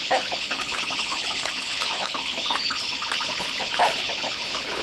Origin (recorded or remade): remade